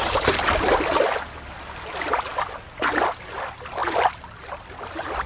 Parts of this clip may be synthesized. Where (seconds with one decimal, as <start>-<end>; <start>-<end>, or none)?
none

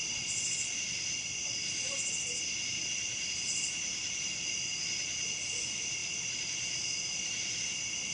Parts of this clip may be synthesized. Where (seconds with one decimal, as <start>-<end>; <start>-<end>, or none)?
none

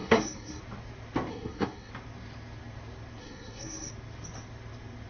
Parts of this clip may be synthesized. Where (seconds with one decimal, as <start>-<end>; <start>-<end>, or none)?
0.0-0.6; 1.3-1.9; 3.2-3.9

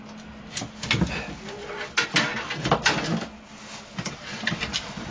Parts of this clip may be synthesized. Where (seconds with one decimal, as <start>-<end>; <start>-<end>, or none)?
none